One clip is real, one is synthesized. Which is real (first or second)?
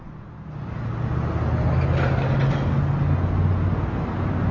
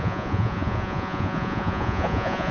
first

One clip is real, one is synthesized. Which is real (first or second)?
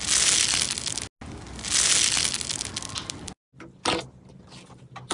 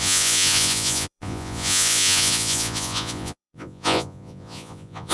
first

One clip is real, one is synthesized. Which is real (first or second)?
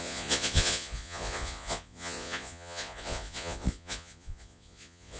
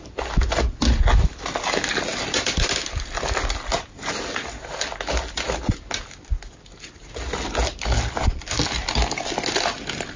second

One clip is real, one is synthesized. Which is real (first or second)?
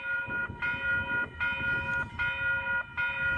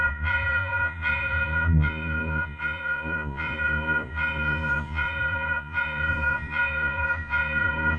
first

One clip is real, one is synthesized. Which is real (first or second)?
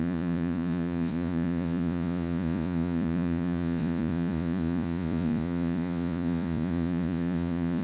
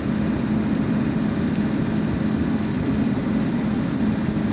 second